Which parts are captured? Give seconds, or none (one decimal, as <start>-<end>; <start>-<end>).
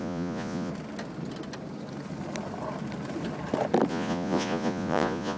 0.7-3.9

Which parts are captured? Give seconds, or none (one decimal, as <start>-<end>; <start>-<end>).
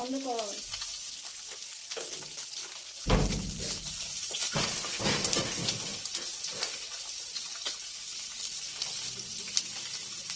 0.0-10.4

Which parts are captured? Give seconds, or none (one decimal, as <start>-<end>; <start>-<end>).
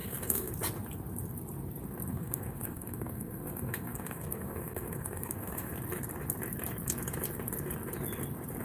0.5-2.1; 5.7-8.6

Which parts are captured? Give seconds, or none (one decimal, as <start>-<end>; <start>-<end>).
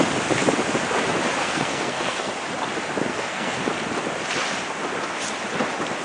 0.0-1.4; 2.3-3.1; 3.7-6.0